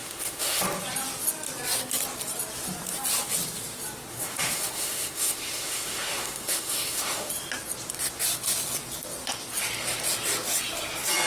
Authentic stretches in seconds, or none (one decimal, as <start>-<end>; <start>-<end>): 0.6-4.1; 7.3-11.3